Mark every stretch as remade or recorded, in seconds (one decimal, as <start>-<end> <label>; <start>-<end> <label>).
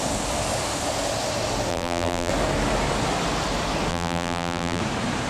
0.0-1.7 recorded; 1.7-2.3 remade; 2.3-3.9 recorded; 3.9-4.8 remade; 4.8-5.3 recorded